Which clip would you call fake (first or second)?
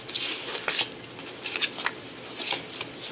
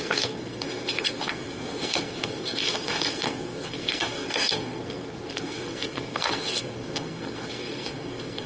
second